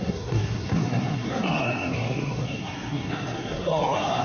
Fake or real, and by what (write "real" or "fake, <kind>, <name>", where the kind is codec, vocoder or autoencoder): fake, codec, SNAC